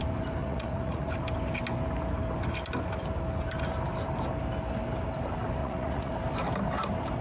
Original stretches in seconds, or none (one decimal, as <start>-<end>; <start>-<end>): 0.0-0.4; 1.1-5.6; 6.1-7.2